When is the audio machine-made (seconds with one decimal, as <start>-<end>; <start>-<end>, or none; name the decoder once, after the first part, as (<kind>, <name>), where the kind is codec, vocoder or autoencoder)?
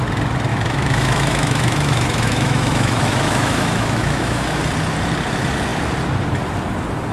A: 0.5-4.6 (autoencoder, DAC-VAE)